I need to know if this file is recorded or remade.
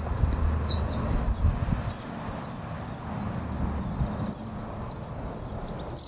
recorded